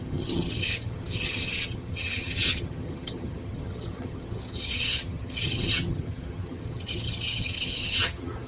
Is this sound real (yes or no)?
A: no